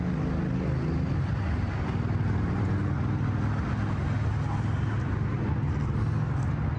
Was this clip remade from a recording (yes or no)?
no